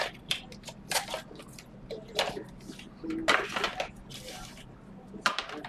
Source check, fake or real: real